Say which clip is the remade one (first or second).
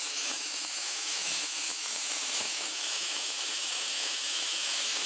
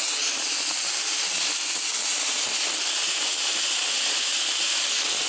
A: first